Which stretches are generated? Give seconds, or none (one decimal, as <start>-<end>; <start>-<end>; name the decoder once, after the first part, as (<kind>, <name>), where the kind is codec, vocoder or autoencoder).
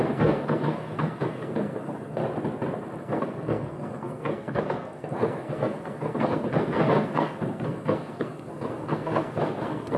0.0-2.2 (codec, SNAC); 3.0-10.0